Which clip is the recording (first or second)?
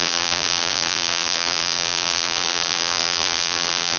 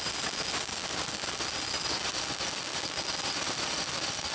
second